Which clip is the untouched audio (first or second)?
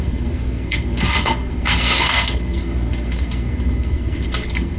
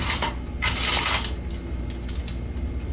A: second